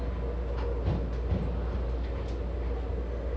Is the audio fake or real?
real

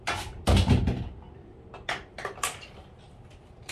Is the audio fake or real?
real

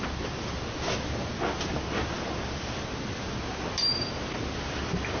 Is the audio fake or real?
real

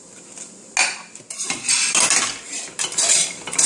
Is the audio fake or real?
real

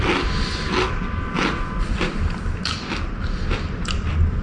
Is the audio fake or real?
real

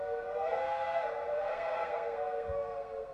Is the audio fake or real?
fake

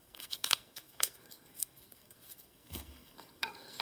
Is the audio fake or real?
fake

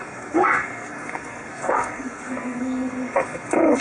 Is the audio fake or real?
fake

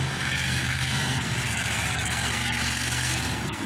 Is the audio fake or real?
fake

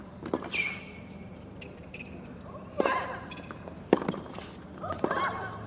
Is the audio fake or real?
real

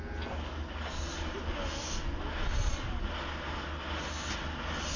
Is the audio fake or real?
real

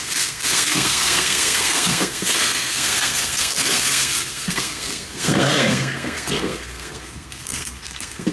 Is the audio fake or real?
fake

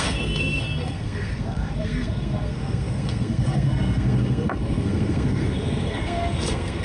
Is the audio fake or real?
fake